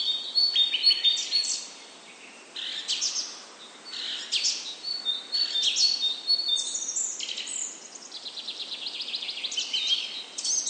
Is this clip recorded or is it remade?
recorded